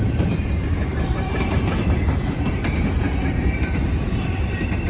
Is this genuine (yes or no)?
no